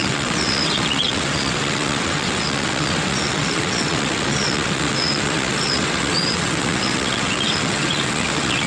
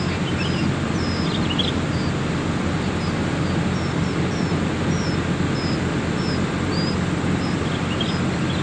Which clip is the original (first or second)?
second